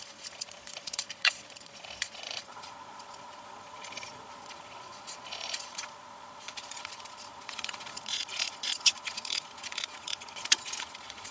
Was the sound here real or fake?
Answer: fake